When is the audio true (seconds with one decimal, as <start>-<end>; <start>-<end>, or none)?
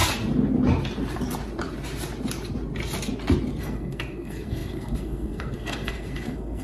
0.0-3.6